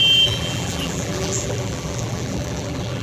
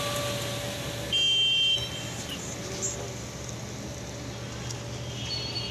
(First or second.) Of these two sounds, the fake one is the first